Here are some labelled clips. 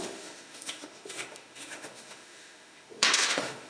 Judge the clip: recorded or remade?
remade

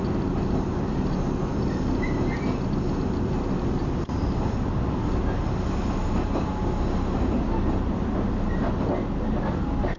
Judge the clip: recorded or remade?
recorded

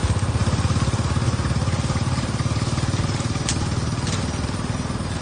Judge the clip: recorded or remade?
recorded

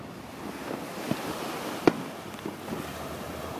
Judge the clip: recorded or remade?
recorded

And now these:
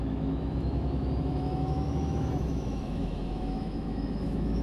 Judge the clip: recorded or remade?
remade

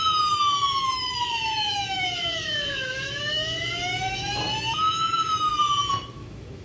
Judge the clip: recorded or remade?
remade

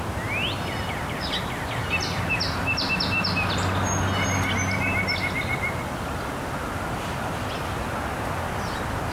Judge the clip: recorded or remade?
recorded